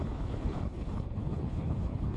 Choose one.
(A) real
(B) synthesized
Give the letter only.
B